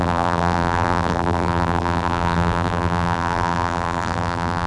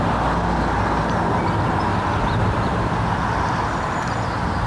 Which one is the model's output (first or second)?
first